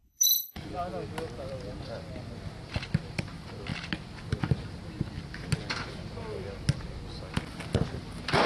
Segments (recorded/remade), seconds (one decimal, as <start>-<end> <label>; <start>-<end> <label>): 0.0-0.8 remade; 0.8-8.5 recorded